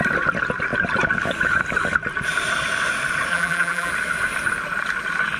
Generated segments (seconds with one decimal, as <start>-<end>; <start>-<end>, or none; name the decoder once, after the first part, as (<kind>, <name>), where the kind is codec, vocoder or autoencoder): 3.3-3.9 (vocoder, BigVGAN v2)